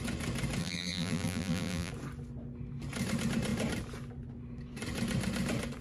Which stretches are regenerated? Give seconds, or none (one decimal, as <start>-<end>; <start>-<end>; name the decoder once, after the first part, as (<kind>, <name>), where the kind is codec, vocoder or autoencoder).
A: 0.6-1.9 (vocoder, BigVGAN v2)